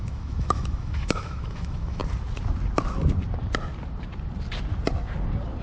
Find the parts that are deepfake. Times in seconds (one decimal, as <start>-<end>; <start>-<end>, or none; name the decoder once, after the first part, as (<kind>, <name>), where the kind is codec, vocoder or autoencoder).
0.0-2.0 (autoencoder, DAC-VAE)